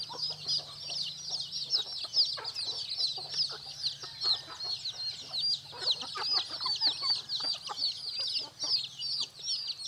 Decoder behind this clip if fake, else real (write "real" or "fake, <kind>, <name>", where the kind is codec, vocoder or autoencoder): real